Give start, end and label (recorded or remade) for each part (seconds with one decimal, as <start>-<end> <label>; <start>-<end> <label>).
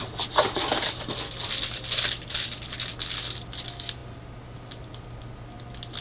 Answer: 0.0-6.0 recorded